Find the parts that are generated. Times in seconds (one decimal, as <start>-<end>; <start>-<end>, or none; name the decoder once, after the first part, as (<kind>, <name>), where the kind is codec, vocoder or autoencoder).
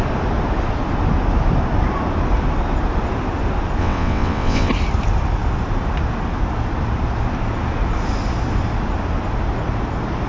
3.8-4.7 (vocoder, WaveNeXt)